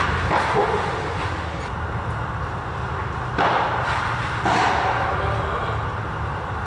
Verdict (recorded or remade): recorded